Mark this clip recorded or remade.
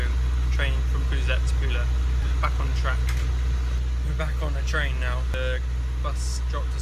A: recorded